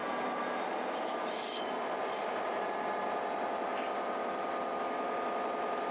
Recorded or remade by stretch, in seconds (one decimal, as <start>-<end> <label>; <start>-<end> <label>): 0.0-5.9 recorded

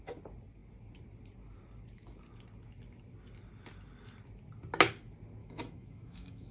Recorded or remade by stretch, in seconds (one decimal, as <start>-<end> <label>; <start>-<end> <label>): 0.0-5.4 recorded; 5.4-6.5 remade